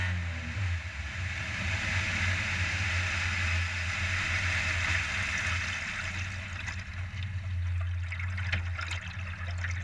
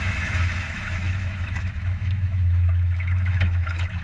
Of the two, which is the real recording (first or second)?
first